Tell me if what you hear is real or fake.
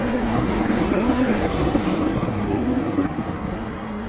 fake